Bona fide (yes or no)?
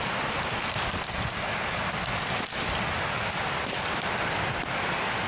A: yes